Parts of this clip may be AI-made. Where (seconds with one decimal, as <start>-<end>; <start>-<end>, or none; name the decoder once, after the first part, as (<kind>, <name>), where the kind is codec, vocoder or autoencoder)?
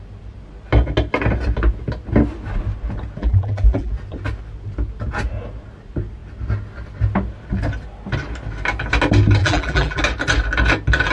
3.2-3.9 (vocoder, BigVGAN v2); 9.4-10.0